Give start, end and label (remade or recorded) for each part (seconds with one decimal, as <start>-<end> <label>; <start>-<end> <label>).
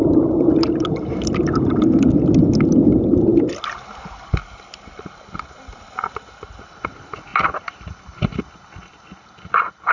0.0-9.9 recorded